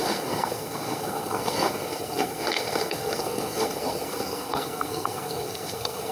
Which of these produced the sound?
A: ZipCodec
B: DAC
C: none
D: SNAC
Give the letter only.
D